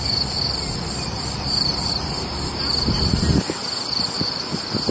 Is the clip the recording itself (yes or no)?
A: yes